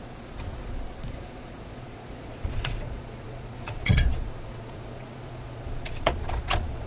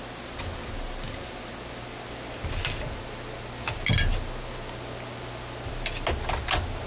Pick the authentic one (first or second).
second